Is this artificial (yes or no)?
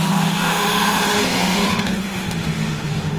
yes